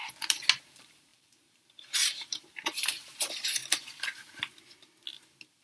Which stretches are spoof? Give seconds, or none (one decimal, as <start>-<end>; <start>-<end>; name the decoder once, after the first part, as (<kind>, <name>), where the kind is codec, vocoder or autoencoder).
0.6-3.6 (vocoder, BigVGAN v2)

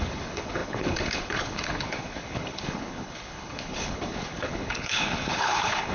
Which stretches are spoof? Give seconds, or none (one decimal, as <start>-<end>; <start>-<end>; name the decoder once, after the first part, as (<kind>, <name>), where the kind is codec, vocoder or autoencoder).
0.0-5.9 (codec, HILCodec)

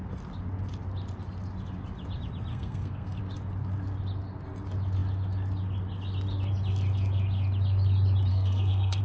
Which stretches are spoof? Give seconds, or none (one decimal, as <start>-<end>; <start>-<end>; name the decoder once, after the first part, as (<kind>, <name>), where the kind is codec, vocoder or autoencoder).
2.5-3.2 (codec, SNAC); 8.3-9.0

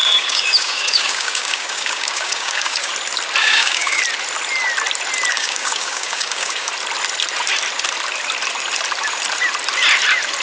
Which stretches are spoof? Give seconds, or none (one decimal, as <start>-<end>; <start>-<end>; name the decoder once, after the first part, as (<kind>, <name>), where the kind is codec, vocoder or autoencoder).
0.0-2.9 (codec, DAC); 3.4-4.0; 5.3-6.7

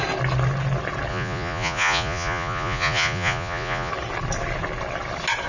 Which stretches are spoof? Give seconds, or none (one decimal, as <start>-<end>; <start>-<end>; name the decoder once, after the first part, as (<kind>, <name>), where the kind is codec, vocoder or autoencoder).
1.1-3.9 (vocoder, Vocos)

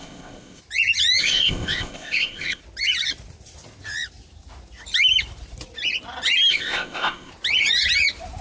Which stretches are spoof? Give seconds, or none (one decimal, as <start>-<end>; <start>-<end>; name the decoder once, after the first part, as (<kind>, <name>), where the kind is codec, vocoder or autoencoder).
0.0-0.6 (codec, ZipCodec); 1.2-2.6; 6.5-7.3

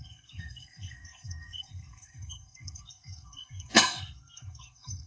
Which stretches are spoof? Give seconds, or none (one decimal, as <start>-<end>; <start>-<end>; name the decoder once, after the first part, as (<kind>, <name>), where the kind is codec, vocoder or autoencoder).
0.0-5.1 (codec, SNAC)

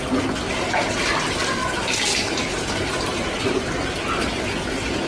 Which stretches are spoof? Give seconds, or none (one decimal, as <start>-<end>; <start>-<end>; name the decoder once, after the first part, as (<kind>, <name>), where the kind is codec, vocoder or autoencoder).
1.6-3.7 (vocoder, BigVGAN v2)